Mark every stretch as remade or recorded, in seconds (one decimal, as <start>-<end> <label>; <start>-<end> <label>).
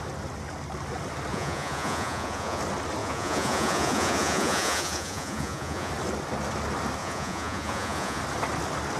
0.0-1.3 recorded; 1.3-2.6 remade; 2.6-3.0 recorded; 3.0-5.9 remade; 5.9-7.0 recorded; 7.0-8.2 remade; 8.2-9.0 recorded